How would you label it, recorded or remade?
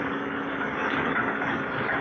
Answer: remade